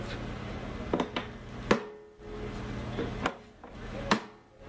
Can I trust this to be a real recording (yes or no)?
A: yes